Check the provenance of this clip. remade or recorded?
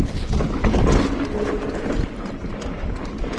recorded